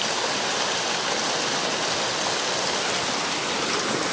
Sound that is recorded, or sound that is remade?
recorded